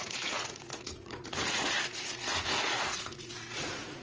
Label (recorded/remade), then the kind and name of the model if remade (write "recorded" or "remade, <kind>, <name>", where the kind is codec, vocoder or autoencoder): remade, vocoder, Vocos